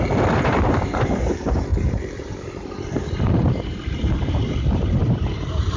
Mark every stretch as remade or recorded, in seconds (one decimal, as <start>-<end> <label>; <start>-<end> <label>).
0.0-5.8 remade